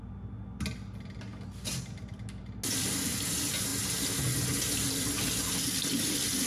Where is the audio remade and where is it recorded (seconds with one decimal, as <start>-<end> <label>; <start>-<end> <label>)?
0.0-6.5 recorded